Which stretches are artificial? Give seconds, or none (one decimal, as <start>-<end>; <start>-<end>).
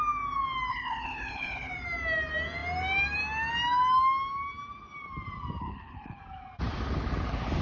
0.7-1.7; 5.6-6.2